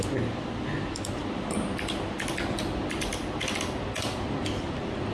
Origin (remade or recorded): recorded